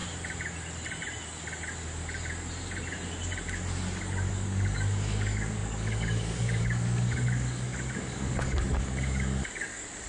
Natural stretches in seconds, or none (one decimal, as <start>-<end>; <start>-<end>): 0.0-4.3